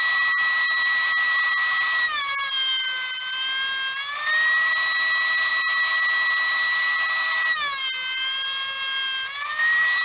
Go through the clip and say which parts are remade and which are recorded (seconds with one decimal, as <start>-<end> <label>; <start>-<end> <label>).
0.0-10.0 recorded

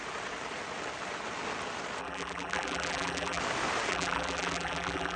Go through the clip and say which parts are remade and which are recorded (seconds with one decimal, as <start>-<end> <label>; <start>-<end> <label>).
0.0-2.0 recorded; 2.0-3.4 remade; 3.4-3.9 recorded; 3.9-5.2 remade

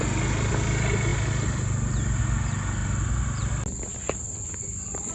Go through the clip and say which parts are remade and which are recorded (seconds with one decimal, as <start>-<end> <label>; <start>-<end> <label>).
0.0-5.1 recorded

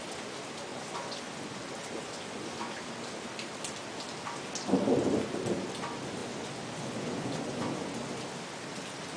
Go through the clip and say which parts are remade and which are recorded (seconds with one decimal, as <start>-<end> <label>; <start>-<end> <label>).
0.0-0.7 recorded; 0.7-1.6 remade; 1.6-2.0 recorded; 2.0-2.8 remade; 2.8-6.2 recorded; 6.2-7.9 remade; 7.9-9.2 recorded